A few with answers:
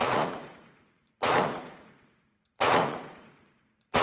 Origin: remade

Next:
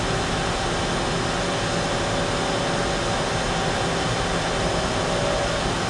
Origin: recorded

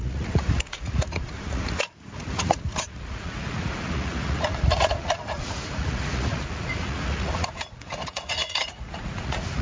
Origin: remade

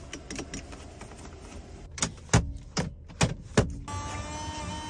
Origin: recorded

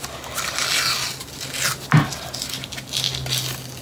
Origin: recorded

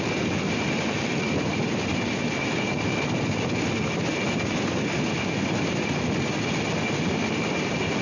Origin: recorded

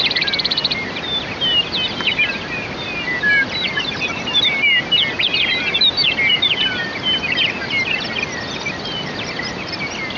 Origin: recorded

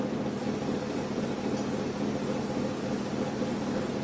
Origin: recorded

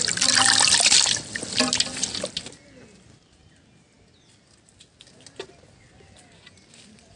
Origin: recorded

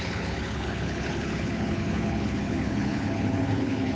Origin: remade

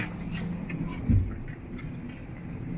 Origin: recorded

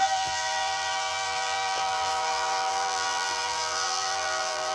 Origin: remade